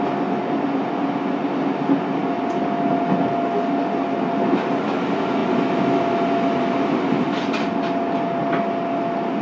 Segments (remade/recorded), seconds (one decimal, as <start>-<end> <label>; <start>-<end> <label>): 0.0-9.4 recorded